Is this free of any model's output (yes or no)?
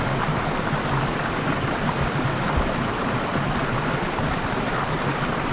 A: yes